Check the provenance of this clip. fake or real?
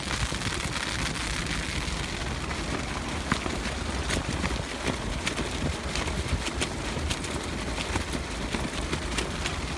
real